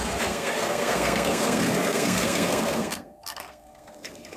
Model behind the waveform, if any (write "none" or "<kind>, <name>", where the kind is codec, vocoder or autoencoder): codec, SNAC